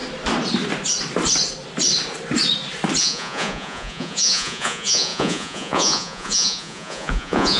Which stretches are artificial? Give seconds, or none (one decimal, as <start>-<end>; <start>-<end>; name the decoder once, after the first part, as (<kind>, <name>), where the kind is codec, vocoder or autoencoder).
3.0-7.6 (vocoder, Vocos)